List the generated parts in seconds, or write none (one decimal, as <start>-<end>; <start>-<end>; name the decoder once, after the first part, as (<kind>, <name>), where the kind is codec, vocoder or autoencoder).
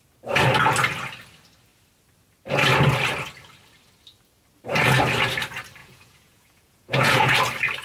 5.8-7.3 (vocoder, Vocos)